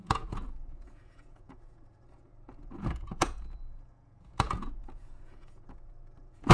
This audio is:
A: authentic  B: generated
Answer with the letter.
B